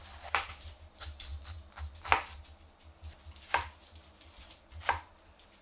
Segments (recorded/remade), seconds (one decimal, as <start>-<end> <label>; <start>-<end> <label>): 0.0-1.3 remade; 1.3-3.5 recorded; 3.5-5.6 remade